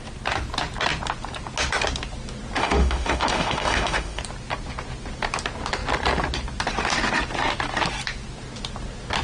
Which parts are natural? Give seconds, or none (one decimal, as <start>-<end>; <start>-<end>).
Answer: 0.0-2.6; 4.2-9.2